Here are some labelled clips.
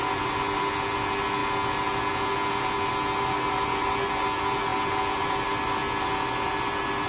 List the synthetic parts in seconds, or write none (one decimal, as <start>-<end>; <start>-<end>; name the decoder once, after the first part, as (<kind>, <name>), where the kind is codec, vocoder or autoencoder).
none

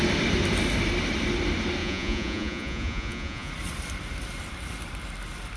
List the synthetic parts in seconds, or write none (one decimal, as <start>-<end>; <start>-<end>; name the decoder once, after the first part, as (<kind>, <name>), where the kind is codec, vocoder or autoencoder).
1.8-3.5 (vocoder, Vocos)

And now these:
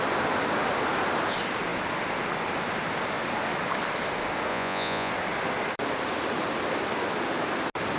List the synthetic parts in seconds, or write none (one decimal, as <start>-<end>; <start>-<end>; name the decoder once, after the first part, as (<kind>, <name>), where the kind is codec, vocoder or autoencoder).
4.5-5.1 (vocoder, Vocos)

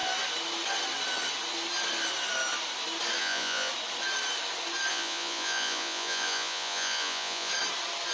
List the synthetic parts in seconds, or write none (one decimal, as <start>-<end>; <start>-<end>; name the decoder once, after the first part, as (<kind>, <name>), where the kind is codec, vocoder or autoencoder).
3.2-3.7 (vocoder, Vocos); 4.9-7.5

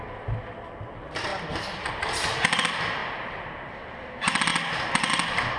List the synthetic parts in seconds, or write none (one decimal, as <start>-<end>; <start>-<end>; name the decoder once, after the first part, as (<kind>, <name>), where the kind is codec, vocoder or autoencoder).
none

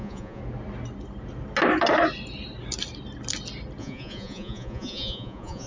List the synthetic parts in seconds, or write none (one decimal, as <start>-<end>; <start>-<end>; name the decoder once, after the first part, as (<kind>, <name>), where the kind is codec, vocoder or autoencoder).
0.0-0.4 (vocoder, Vocos); 3.8-5.7

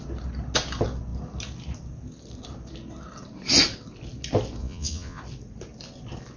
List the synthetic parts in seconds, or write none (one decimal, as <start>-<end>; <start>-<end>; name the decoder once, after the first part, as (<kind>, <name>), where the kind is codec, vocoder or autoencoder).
4.6-5.2 (vocoder, Vocos)